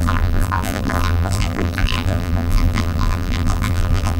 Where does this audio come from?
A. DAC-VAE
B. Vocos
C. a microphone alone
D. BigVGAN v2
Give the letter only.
D